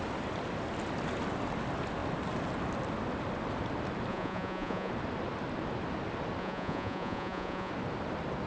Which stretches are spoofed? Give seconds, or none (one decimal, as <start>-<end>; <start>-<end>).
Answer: 4.1-4.9; 6.4-7.7